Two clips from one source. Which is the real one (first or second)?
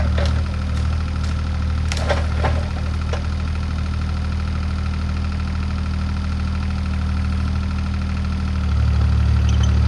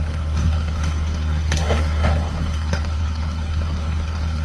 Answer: first